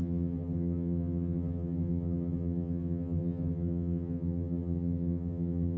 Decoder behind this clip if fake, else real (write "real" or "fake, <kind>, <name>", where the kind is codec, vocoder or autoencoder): fake, vocoder, HiFi-GAN